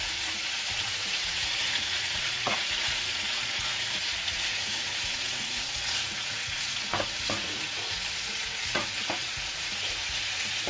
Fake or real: fake